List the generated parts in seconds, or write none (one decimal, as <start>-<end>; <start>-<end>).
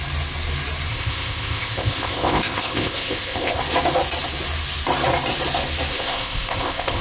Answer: 0.9-3.6; 5.9-7.0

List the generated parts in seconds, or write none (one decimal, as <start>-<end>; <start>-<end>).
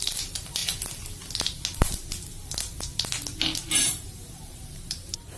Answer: 0.0-0.6; 3.8-5.4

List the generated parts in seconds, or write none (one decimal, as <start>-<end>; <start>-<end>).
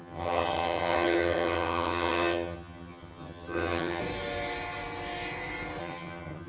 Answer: 0.0-4.0; 5.8-6.5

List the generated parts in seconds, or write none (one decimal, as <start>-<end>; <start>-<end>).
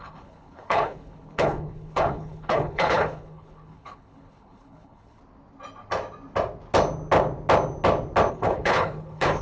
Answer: 0.0-5.2; 8.3-9.4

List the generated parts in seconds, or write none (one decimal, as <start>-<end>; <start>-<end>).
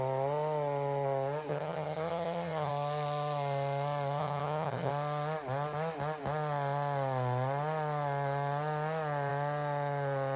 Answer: 1.5-2.7; 4.2-4.9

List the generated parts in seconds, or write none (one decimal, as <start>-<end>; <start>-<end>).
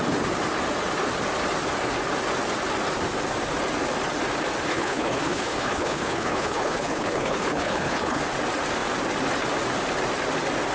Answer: 4.7-8.2